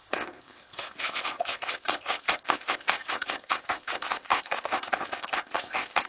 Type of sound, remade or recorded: remade